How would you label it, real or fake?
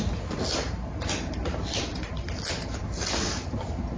real